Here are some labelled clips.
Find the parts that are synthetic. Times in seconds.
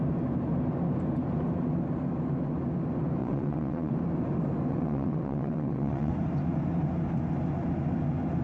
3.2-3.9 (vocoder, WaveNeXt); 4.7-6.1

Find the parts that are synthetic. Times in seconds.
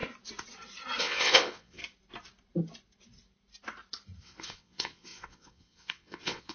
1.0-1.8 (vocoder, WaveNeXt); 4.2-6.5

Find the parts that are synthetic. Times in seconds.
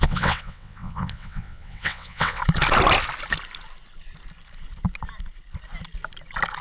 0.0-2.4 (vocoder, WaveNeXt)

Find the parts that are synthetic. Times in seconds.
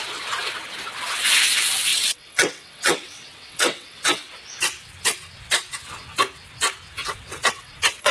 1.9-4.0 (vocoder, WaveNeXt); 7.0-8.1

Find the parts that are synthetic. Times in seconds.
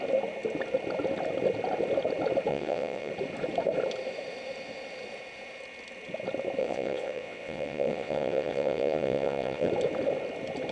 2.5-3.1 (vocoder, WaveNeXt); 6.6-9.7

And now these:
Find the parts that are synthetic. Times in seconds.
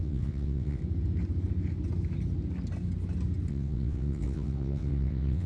0.0-0.8 (vocoder, WaveNeXt); 3.5-5.5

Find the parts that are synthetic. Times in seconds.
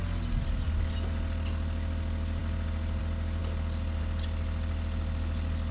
none